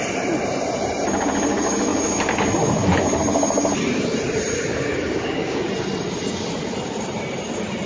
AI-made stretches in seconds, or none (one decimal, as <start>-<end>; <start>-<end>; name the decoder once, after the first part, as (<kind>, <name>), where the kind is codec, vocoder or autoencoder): 4.7-5.6 (codec, DAC)